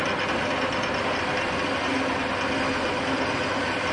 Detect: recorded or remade recorded